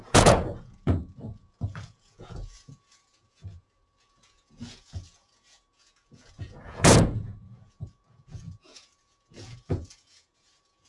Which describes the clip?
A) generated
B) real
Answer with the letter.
A